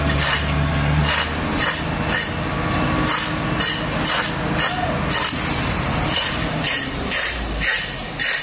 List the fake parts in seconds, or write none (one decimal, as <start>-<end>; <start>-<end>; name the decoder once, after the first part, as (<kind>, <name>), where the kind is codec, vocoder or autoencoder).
0.0-1.0 (vocoder, BigVGAN v2); 5.7-8.4